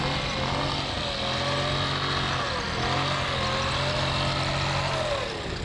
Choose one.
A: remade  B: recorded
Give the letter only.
B